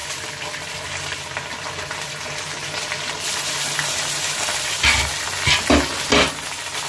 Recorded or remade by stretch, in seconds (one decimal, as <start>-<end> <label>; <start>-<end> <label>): 0.0-3.9 remade; 3.9-6.9 recorded